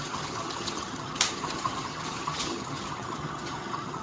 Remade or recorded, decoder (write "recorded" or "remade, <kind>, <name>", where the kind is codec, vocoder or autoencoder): remade, vocoder, HiFi-GAN